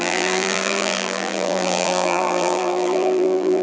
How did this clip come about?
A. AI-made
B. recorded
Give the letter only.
A